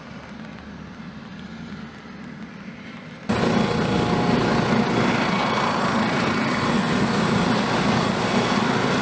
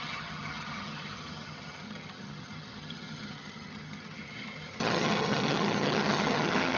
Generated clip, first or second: second